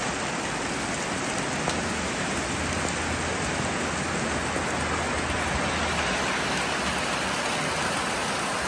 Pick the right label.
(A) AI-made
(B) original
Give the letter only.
B